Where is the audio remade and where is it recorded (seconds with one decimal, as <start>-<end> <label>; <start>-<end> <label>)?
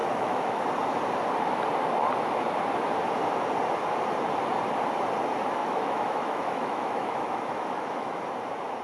0.0-0.6 remade; 0.6-5.6 recorded; 5.6-8.2 remade; 8.2-8.8 recorded